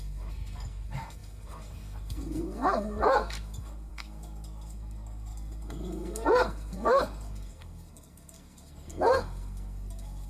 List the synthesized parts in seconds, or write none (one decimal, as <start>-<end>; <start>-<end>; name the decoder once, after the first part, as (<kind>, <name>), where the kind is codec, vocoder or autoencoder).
0.0-10.3 (codec, SNAC)